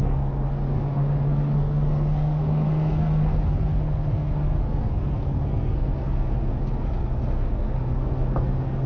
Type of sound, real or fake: fake